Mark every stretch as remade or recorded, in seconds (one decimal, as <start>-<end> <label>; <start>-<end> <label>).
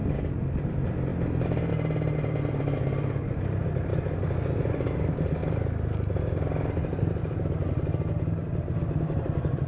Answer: 0.0-0.6 recorded; 0.6-3.9 remade; 3.9-4.5 recorded; 4.5-5.4 remade; 5.4-9.2 recorded; 9.2-9.7 remade